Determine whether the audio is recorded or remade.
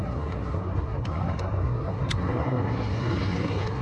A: remade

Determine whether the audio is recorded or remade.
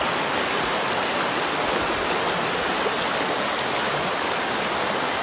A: recorded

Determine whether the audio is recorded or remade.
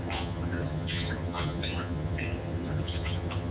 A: remade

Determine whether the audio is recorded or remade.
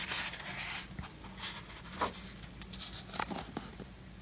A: recorded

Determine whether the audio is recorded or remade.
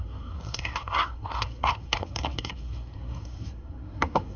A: remade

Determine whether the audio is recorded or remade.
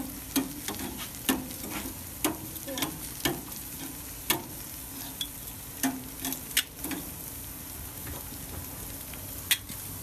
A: recorded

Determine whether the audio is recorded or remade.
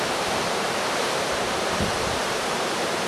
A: remade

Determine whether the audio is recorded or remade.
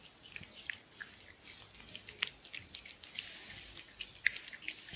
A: recorded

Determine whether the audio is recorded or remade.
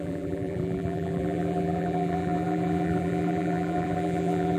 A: remade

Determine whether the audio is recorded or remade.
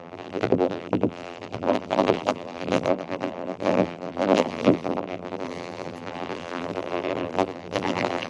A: remade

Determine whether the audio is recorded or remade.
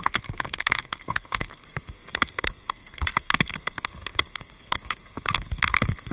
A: remade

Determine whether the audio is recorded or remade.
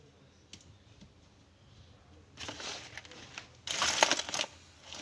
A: recorded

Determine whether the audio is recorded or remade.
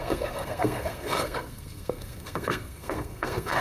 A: remade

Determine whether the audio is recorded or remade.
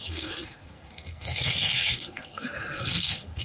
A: remade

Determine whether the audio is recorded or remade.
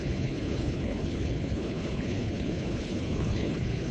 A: remade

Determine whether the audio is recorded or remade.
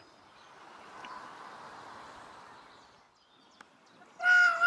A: recorded